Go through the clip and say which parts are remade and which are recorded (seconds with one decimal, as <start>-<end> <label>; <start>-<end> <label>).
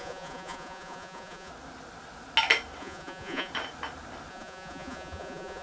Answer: 0.0-1.5 remade; 1.5-2.8 recorded; 2.8-3.5 remade; 3.5-4.3 recorded; 4.3-5.6 remade